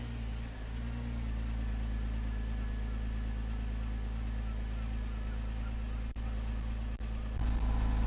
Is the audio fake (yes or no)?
no